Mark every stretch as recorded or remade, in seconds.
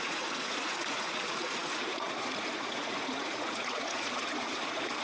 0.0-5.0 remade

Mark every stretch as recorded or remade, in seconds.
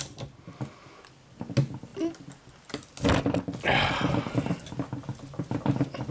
0.0-6.1 recorded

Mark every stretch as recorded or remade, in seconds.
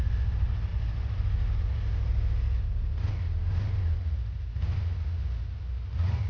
0.0-6.3 recorded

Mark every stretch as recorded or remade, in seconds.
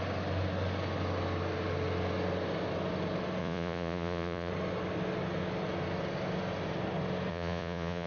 0.0-3.4 recorded; 3.4-4.5 remade; 4.5-7.3 recorded; 7.3-8.1 remade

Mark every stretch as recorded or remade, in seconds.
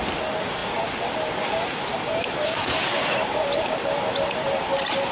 0.0-5.1 recorded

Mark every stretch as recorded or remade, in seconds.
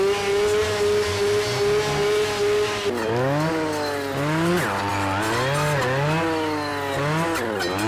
0.0-7.9 recorded